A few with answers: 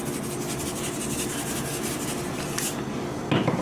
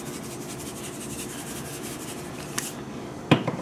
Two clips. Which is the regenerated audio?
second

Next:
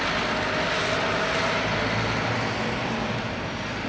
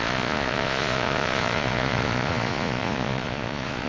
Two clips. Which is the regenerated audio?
second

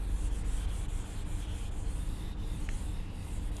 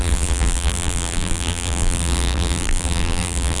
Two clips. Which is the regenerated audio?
second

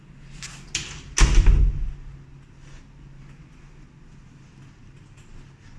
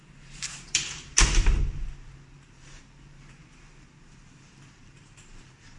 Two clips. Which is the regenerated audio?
second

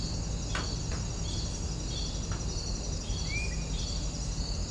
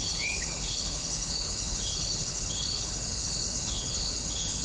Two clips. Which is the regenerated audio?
second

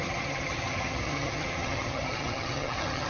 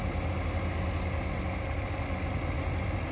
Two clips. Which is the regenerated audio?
first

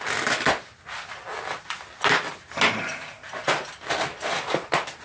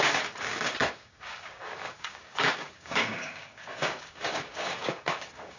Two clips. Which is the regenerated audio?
second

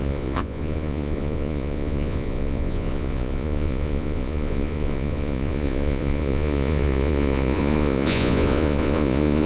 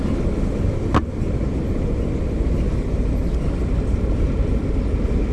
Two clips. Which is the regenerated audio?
first